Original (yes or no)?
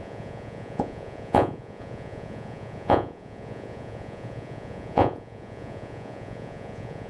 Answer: no